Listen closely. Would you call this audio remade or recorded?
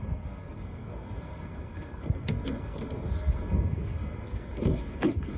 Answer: remade